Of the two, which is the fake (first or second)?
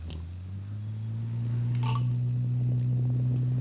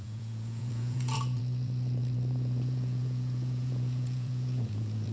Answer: second